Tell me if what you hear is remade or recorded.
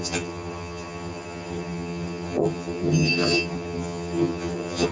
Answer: remade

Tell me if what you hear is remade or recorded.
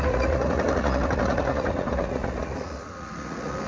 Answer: remade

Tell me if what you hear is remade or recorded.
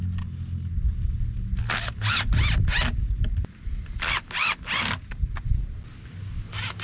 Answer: recorded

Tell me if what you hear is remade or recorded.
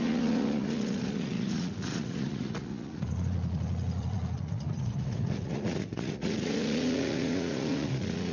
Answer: remade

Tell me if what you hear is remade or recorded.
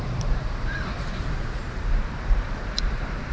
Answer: remade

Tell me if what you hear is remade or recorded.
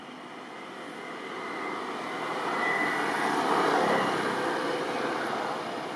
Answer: recorded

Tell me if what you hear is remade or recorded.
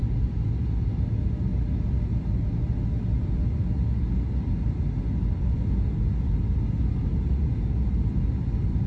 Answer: recorded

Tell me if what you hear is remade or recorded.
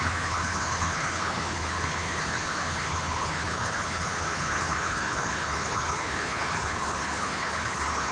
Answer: remade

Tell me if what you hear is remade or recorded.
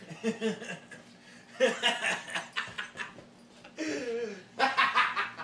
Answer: recorded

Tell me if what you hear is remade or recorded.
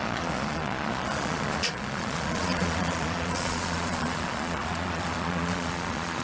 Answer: remade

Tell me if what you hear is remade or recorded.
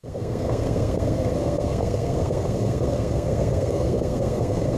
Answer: remade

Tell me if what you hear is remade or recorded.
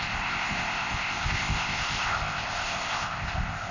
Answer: remade